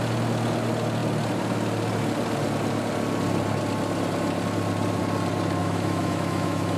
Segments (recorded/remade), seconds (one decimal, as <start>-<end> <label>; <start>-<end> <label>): 0.0-5.6 recorded; 5.6-6.8 remade